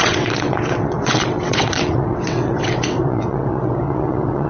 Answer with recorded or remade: remade